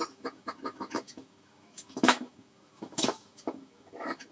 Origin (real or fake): fake